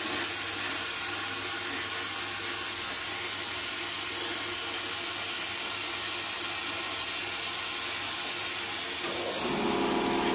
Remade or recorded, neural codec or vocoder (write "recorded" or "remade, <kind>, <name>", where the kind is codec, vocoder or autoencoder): recorded